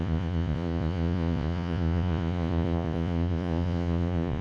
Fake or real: fake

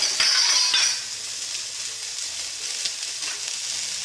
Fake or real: real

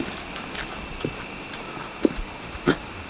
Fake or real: real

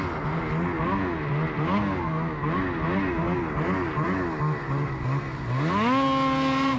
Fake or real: real